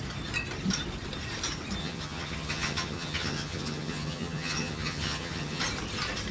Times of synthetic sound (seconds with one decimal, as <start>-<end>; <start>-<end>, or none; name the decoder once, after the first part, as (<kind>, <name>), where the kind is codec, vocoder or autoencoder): 1.8-5.6 (vocoder, HiFi-GAN)